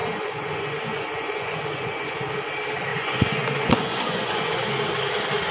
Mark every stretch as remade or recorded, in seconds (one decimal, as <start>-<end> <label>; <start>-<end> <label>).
0.0-2.3 remade; 2.3-2.9 recorded; 2.9-4.8 remade; 4.8-5.5 recorded